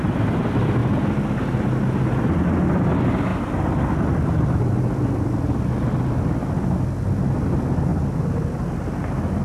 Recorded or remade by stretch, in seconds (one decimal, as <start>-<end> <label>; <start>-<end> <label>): 0.0-0.8 remade; 0.8-2.9 recorded; 2.9-9.4 remade